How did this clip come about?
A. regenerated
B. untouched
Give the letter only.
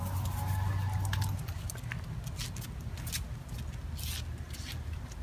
B